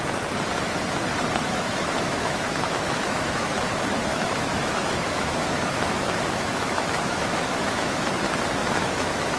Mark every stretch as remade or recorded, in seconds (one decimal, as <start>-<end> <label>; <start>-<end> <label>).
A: 0.0-1.3 recorded; 1.3-3.6 remade; 3.6-4.1 recorded; 4.1-8.1 remade; 8.1-8.6 recorded; 8.6-9.4 remade

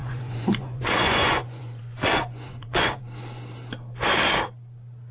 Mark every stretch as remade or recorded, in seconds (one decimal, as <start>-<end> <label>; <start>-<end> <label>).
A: 0.0-3.0 remade; 3.0-5.1 recorded